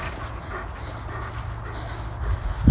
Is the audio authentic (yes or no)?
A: yes